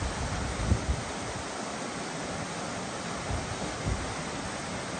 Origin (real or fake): real